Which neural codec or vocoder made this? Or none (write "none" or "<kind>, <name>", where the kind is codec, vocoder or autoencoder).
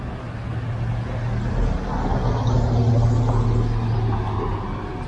none